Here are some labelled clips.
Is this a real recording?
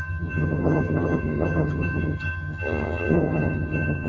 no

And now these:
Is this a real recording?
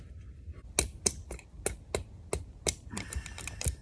yes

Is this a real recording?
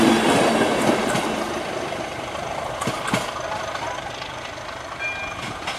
yes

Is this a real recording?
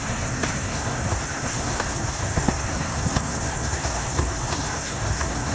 no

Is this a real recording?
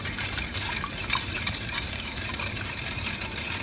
no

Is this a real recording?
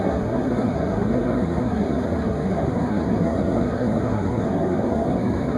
no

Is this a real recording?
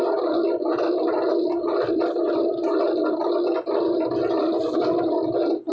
yes